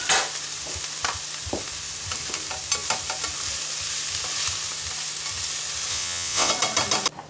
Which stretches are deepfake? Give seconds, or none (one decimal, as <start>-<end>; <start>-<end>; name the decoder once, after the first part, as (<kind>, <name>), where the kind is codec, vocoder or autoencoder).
5.9-6.5 (vocoder, WaveNeXt)